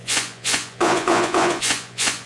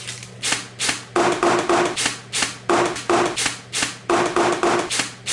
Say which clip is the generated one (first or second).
first